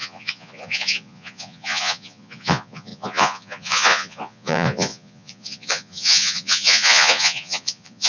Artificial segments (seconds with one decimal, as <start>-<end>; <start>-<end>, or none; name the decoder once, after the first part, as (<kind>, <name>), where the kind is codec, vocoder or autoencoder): 0.0-8.1 (vocoder, Vocos)